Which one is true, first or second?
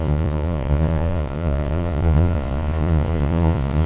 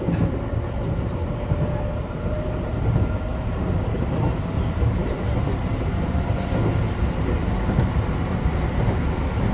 second